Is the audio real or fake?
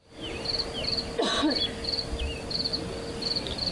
real